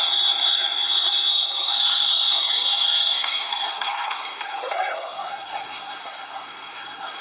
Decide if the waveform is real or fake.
fake